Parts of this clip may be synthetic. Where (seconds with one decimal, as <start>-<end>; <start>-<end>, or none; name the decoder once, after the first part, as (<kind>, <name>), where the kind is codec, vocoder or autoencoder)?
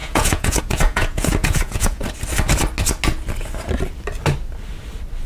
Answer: 0.0-2.0 (vocoder, Vocos)